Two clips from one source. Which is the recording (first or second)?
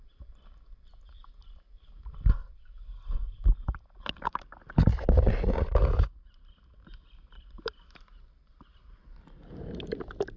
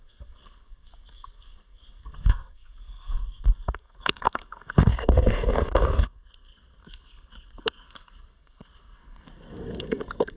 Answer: first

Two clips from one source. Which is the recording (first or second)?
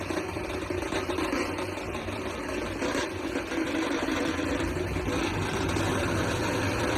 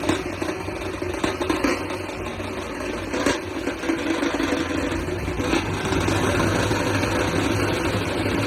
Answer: second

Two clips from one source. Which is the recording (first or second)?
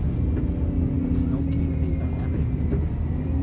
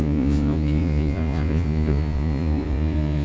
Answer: first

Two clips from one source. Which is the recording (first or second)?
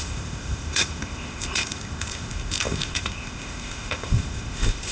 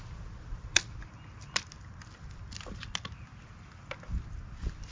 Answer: second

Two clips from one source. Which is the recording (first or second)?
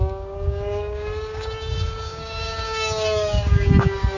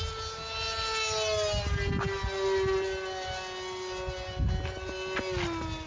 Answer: second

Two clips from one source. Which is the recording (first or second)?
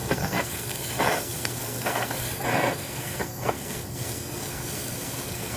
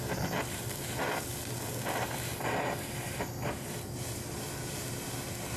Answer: second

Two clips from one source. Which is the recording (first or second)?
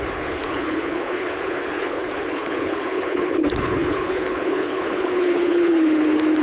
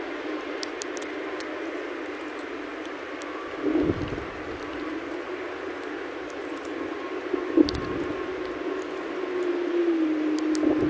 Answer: second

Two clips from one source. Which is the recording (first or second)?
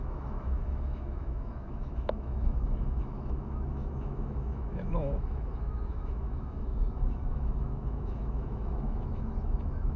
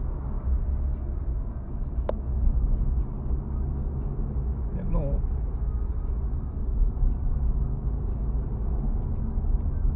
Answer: second